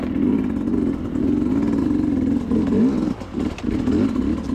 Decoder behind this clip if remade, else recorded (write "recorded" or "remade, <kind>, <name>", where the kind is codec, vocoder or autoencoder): recorded